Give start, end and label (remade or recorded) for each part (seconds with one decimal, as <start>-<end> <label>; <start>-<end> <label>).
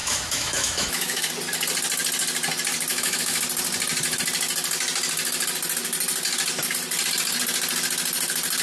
0.0-1.3 remade; 1.3-2.9 recorded; 2.9-3.4 remade; 3.4-8.6 recorded